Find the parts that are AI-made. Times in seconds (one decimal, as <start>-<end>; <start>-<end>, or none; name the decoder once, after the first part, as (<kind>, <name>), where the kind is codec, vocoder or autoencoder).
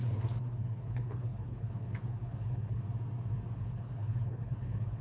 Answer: 0.0-2.8 (codec, HILCodec); 3.6-5.0